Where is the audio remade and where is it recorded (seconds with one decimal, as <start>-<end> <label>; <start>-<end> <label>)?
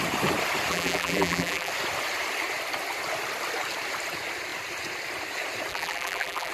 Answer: 0.0-0.7 recorded; 0.7-1.7 remade; 1.7-5.7 recorded; 5.7-6.5 remade